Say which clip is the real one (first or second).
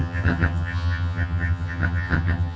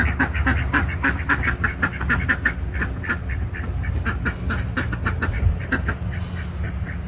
second